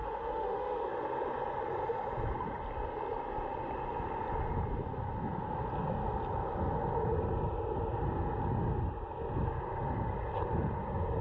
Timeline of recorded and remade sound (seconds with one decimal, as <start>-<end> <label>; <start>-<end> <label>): 0.0-0.9 remade; 0.9-11.2 recorded